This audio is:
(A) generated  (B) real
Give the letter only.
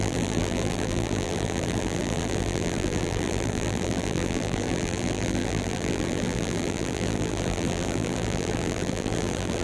A